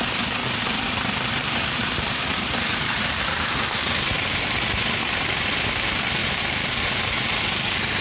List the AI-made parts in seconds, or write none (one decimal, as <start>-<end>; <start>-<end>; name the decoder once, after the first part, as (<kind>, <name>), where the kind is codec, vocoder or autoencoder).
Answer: 0.4-4.4 (vocoder, BigVGAN v2); 6.2-7.1